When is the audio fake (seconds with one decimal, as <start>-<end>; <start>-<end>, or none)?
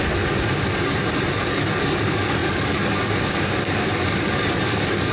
0.0-0.7; 1.5-5.1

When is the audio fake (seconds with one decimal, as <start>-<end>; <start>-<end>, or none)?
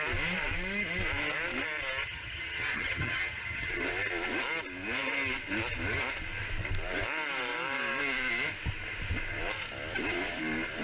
2.0-3.7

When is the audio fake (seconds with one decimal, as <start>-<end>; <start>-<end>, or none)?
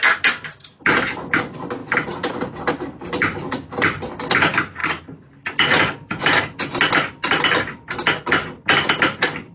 none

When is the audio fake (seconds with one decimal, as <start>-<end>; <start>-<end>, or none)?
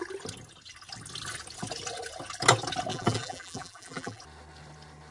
2.9-4.2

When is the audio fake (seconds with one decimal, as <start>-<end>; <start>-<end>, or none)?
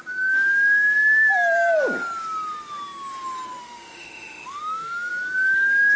3.6-5.1